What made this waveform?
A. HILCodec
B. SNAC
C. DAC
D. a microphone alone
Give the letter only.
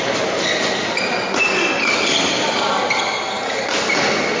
D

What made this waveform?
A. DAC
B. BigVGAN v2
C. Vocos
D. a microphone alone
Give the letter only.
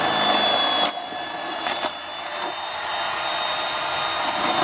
D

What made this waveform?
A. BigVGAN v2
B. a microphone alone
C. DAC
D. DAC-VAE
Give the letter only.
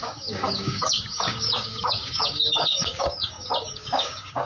C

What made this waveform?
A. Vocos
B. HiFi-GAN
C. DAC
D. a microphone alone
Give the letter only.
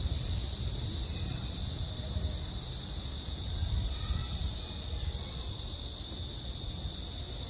D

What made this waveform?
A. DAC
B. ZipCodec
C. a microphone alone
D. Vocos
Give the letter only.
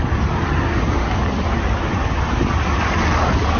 C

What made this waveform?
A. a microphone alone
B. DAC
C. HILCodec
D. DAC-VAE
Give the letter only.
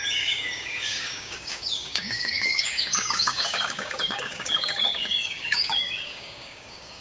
B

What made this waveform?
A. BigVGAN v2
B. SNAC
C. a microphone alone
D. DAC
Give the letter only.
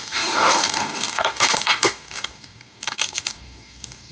D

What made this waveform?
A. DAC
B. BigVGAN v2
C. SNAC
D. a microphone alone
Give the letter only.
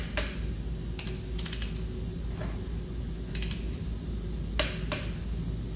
D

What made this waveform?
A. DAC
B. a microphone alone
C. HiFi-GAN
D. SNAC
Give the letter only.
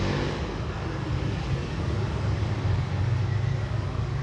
A